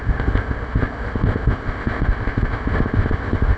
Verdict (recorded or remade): remade